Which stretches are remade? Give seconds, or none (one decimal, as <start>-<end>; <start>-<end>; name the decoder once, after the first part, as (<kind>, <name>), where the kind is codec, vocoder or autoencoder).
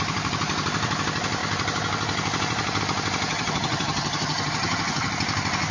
3.3-5.1 (vocoder, HiFi-GAN)